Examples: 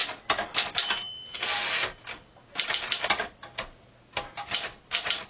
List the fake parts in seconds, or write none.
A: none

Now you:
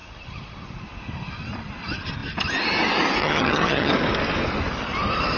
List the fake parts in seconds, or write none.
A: 3.2-3.9 (vocoder, HiFi-GAN)

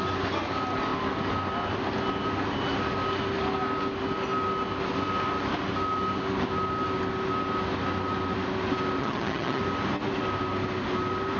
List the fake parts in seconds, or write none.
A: 9.0-9.6 (vocoder, HiFi-GAN)

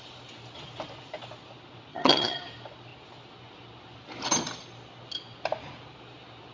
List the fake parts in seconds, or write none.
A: 1.9-2.4 (vocoder, HiFi-GAN)

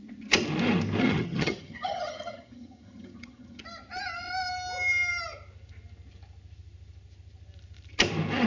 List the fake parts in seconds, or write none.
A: 1.0-3.6 (vocoder, HiFi-GAN)